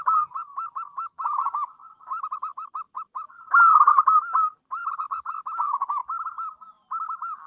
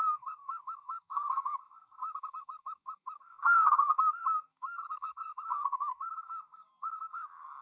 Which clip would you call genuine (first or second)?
first